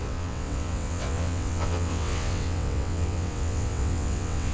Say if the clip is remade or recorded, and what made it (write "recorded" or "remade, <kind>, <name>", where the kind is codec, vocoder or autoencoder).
remade, vocoder, WaveNeXt